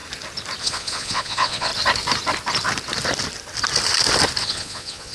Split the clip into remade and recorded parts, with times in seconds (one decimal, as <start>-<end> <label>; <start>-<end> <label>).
0.0-0.6 recorded; 0.6-1.7 remade; 1.7-4.4 recorded; 4.4-5.1 remade